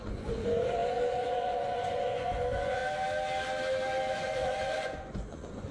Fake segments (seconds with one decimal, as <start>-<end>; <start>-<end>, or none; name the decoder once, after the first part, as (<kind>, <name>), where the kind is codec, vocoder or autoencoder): 0.0-2.8 (vocoder, Vocos); 4.1-5.7